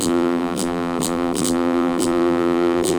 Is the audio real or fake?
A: fake